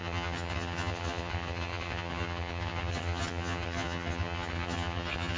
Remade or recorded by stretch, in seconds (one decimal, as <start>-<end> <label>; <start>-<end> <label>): 0.0-5.4 remade